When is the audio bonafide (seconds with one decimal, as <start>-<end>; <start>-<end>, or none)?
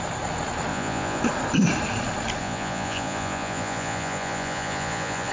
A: 0.0-0.7; 1.2-2.4